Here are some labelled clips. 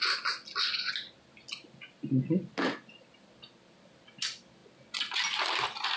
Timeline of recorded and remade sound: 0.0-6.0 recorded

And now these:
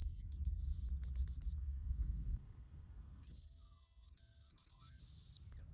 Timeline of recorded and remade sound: 0.0-0.6 remade; 0.6-1.6 recorded; 1.6-5.0 remade; 5.0-5.7 recorded